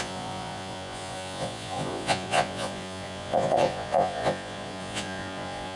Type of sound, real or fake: fake